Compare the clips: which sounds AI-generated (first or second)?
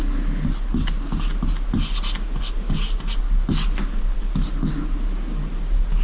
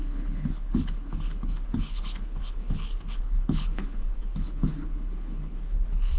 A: second